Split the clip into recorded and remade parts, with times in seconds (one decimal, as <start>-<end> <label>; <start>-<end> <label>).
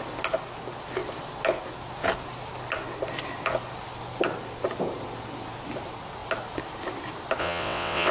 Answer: 0.0-7.4 recorded; 7.4-8.1 remade